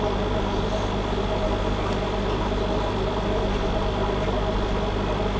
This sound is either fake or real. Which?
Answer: real